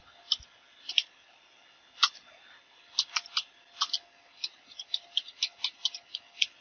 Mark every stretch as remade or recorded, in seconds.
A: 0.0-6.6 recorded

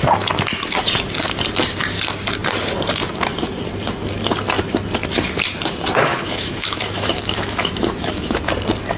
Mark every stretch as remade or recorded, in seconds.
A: 0.0-6.1 recorded; 6.1-8.4 remade; 8.4-9.0 recorded

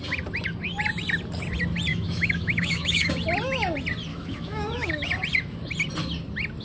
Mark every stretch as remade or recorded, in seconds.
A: 0.0-1.9 recorded; 1.9-3.1 remade; 3.1-4.1 recorded; 4.1-5.1 remade; 5.1-6.6 recorded

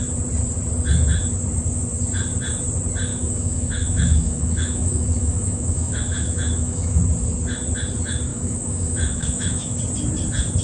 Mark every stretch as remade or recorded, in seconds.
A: 0.0-3.1 recorded; 3.1-7.0 remade; 7.0-8.3 recorded; 8.3-9.8 remade; 9.8-10.6 recorded

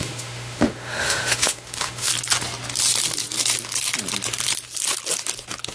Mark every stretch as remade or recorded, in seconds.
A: 0.0-2.1 remade; 2.1-5.7 recorded

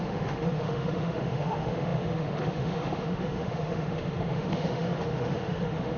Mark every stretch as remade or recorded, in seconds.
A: 0.0-6.0 remade